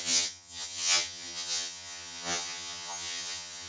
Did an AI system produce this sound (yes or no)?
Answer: yes